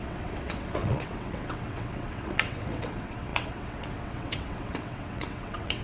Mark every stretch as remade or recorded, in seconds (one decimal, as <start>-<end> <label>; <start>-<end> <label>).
0.0-5.8 remade